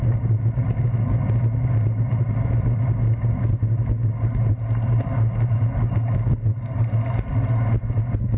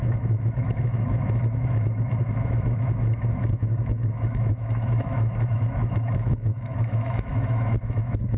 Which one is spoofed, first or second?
second